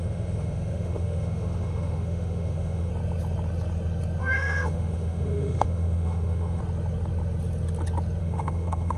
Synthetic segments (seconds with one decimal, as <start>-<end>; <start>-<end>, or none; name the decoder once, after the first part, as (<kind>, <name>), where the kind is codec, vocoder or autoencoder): 0.0-2.9 (autoencoder, DAC-VAE); 4.2-6.6; 8.2-9.0